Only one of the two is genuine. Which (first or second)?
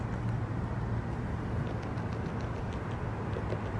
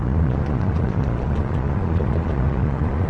first